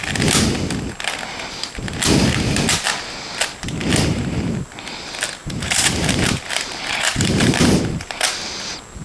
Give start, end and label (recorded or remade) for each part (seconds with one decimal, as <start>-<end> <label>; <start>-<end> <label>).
0.0-4.1 recorded; 4.1-4.8 remade; 4.8-5.4 recorded; 5.4-8.2 remade; 8.2-9.0 recorded